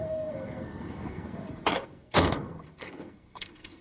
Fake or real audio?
fake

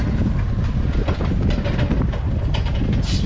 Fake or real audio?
real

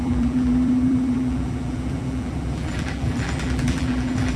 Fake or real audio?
fake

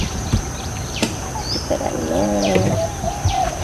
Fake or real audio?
fake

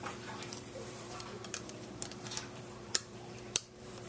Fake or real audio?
fake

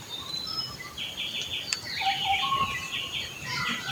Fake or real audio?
real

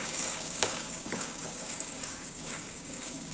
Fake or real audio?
fake